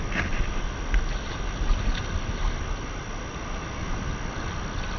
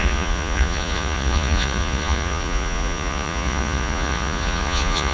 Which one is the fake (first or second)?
second